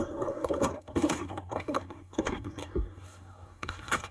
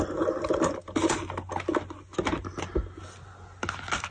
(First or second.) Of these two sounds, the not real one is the first